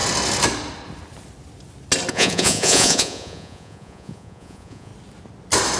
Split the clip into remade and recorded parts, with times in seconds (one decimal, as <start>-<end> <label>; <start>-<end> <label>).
0.0-2.1 recorded; 2.1-4.9 remade; 4.9-5.8 recorded